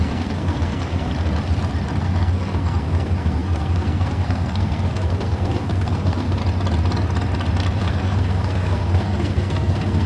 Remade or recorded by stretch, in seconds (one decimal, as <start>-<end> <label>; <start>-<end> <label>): 0.0-1.1 remade; 1.1-2.0 recorded; 2.0-6.4 remade; 6.4-7.8 recorded; 7.8-10.1 remade